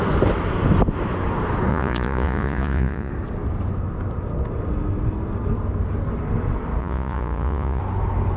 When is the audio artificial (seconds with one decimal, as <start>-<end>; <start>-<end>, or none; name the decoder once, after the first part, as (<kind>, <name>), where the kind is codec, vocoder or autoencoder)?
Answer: 1.7-3.1 (vocoder, Vocos); 6.8-7.8